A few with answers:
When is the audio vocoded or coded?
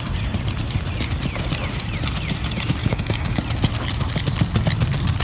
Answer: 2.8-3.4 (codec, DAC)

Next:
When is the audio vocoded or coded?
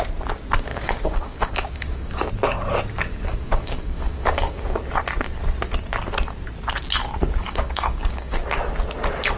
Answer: 0.7-2.3 (codec, DAC); 3.1-4.8; 7.4-8.4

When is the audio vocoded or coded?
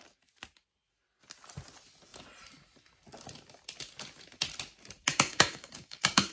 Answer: 5.1-6.3 (codec, DAC)